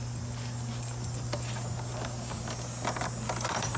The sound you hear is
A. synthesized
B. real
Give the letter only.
B